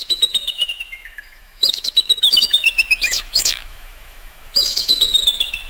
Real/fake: fake